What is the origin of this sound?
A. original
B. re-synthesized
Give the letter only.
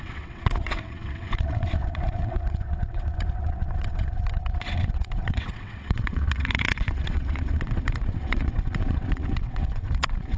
B